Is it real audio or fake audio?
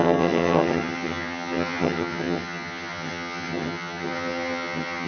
fake